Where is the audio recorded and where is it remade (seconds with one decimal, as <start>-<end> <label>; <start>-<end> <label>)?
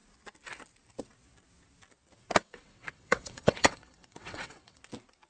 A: 0.0-2.4 recorded; 2.4-4.8 remade; 4.8-5.3 recorded